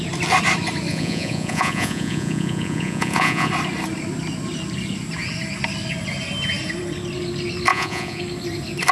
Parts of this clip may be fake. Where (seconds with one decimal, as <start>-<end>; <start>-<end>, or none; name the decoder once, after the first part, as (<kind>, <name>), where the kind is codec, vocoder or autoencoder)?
0.9-3.5 (vocoder, Vocos); 7.7-8.2